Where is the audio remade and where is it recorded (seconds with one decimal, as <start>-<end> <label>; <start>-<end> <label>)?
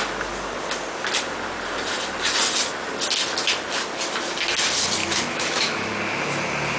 0.0-5.0 recorded; 5.0-5.9 remade; 5.9-6.8 recorded